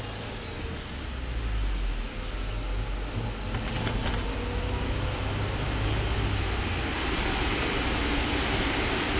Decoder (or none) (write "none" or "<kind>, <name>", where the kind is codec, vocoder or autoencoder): none